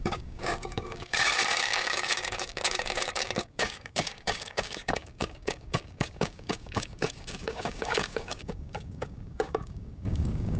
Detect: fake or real fake